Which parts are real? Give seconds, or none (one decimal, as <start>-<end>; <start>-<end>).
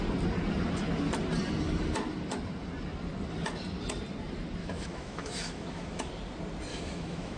0.0-4.6; 6.1-6.7